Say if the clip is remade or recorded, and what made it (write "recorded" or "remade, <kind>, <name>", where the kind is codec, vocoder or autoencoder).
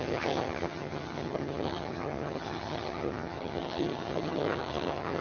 remade, vocoder, HiFi-GAN